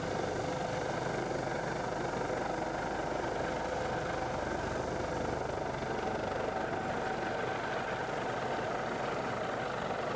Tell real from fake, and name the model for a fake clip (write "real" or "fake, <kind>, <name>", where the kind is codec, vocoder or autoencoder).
real